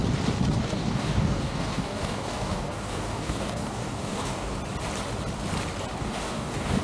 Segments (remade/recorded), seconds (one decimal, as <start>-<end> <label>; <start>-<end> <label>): 0.0-0.6 recorded; 0.6-4.6 remade; 4.6-6.0 recorded; 6.0-6.8 remade